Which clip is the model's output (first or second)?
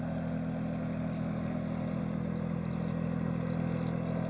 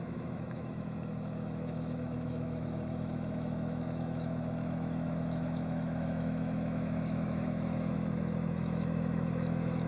second